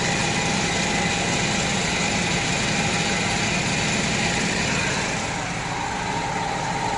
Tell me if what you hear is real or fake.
real